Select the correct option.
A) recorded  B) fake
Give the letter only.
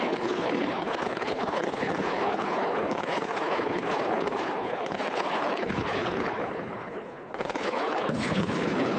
B